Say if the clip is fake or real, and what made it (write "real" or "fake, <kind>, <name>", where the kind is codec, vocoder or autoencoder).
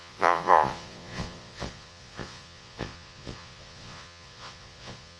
fake, vocoder, Vocos